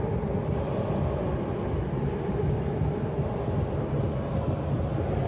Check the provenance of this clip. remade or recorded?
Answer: recorded